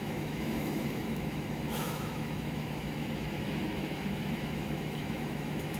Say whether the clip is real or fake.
fake